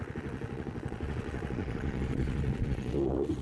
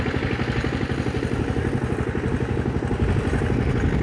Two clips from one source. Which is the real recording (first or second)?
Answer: second